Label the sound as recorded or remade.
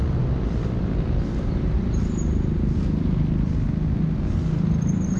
recorded